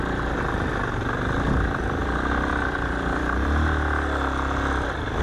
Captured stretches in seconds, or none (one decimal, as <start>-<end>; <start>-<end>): 0.0-2.0